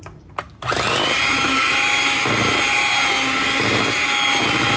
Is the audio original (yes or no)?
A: yes